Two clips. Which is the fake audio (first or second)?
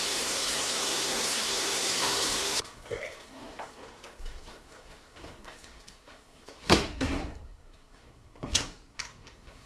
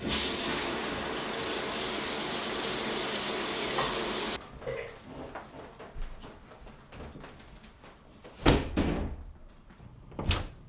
first